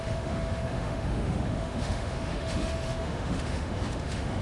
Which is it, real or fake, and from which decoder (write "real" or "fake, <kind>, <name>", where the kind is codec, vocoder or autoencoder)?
fake, autoencoder, DAC-VAE